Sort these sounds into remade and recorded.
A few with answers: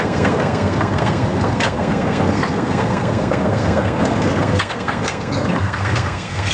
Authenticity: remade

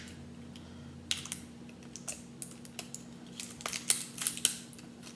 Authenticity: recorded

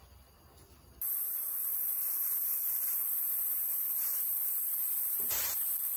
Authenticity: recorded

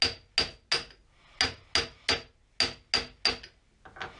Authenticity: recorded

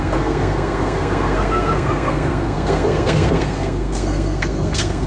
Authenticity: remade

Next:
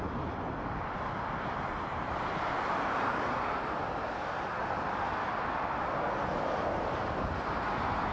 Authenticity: recorded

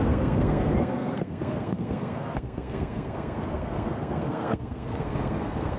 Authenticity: remade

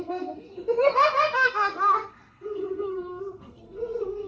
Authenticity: remade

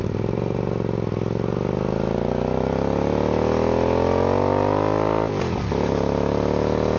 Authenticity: recorded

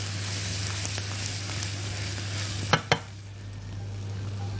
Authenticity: recorded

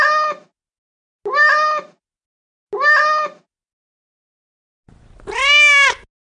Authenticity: recorded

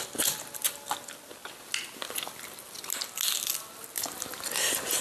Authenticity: recorded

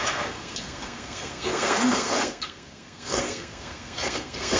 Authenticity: remade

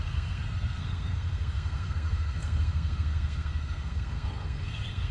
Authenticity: remade